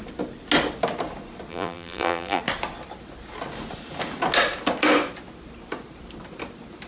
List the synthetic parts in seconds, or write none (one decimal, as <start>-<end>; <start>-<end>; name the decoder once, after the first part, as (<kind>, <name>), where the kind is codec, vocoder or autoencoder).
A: 1.5-2.4 (vocoder, BigVGAN v2)